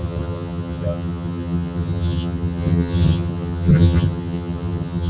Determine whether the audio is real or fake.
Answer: fake